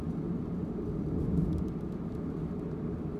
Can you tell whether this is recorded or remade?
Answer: recorded